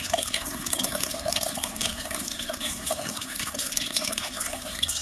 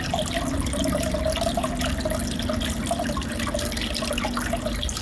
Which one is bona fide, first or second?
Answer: second